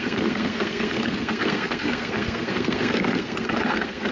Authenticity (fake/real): fake